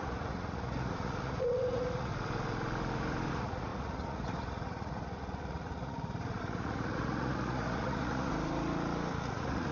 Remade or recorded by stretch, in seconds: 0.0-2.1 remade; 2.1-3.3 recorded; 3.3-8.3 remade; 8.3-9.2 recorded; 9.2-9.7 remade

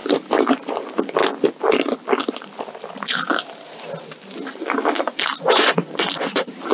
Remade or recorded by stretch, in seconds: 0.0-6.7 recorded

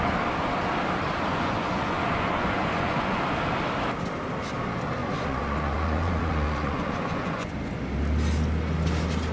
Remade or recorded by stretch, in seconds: 0.0-1.3 recorded; 1.3-3.2 remade; 3.2-5.0 recorded; 5.0-7.5 remade; 7.5-9.3 recorded

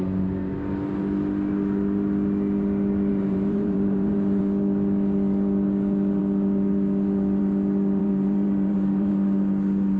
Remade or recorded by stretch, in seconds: 0.0-3.1 recorded; 3.1-4.4 remade; 4.4-8.0 recorded; 8.0-9.1 remade; 9.1-10.0 recorded

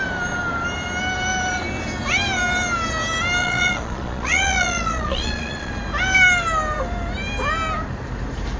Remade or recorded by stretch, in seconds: 0.0-3.4 recorded; 3.4-5.7 remade; 5.7-8.6 recorded